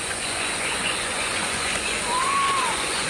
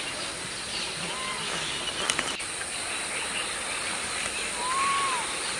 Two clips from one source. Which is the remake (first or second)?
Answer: first